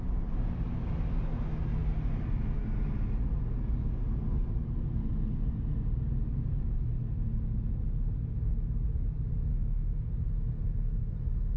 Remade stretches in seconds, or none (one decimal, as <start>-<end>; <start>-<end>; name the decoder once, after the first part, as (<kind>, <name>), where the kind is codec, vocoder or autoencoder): 9.5-10.1 (autoencoder, DAC-VAE)